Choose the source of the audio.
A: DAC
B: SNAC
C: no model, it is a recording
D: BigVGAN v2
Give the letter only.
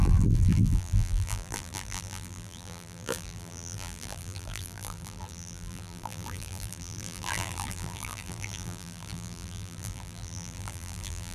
D